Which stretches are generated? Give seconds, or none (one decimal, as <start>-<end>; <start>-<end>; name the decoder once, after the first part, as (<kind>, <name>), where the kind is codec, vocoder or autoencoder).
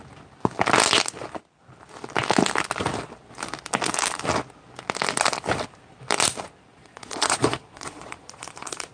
6.7-8.9 (vocoder, Vocos)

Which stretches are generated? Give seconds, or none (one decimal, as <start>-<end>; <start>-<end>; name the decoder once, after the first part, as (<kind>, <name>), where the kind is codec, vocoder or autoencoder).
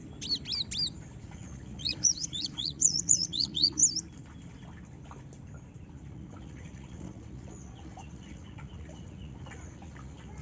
1.2-3.8 (vocoder, Vocos); 5.9-10.4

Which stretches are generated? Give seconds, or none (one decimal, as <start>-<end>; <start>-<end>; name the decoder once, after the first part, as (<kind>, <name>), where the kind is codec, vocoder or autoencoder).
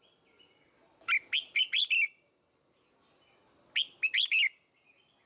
none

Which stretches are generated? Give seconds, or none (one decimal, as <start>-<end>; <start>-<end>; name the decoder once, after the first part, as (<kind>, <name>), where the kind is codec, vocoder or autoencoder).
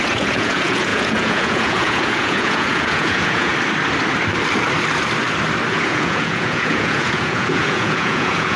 0.0-3.5 (vocoder, Vocos); 5.7-8.6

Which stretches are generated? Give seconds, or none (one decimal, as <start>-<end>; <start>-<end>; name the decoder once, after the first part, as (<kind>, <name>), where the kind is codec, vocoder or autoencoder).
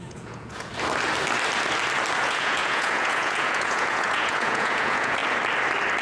0.0-0.7 (vocoder, Vocos); 2.2-5.2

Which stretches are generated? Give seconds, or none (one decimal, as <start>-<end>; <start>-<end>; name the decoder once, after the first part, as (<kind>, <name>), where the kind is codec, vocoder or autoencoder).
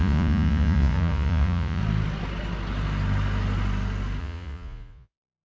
0.0-1.8 (vocoder, Vocos); 4.2-5.4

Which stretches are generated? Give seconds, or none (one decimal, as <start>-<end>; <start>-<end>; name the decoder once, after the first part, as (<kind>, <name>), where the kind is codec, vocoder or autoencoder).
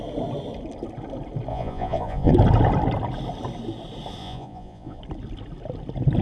1.5-2.3 (vocoder, Vocos); 4.2-5.0